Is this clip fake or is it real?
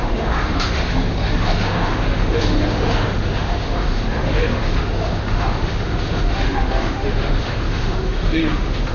fake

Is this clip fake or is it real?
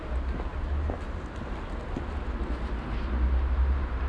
real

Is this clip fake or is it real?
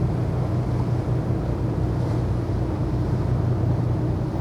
real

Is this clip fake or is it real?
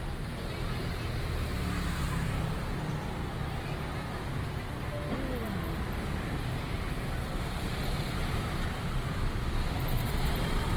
real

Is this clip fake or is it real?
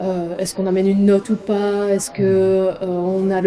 fake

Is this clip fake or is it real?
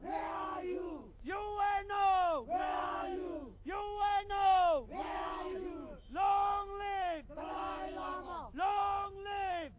fake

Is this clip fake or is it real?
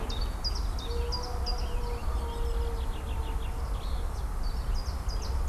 real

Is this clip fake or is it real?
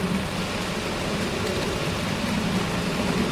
real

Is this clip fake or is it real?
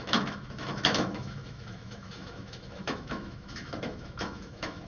fake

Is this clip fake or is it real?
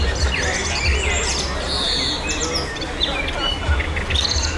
real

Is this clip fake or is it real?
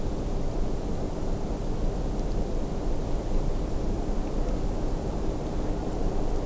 real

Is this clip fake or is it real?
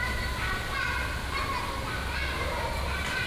real